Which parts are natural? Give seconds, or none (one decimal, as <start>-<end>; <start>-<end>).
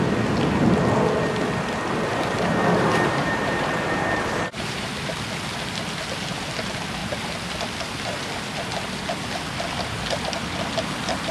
0.0-2.1; 5.0-11.3